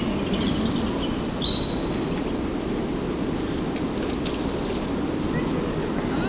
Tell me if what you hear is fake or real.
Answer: real